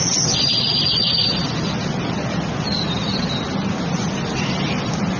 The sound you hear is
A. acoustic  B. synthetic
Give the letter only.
A